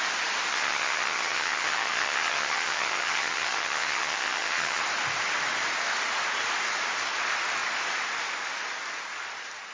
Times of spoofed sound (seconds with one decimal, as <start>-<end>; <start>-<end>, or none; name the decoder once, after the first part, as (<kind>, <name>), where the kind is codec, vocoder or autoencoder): 0.5-4.8 (vocoder, HiFi-GAN)